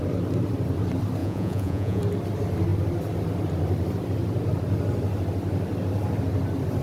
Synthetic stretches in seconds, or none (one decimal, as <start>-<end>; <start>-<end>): 1.2-2.0